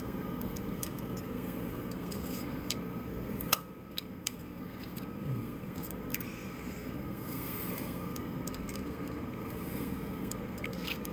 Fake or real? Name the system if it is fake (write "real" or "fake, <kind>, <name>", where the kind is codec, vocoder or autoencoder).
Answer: fake, codec, SNAC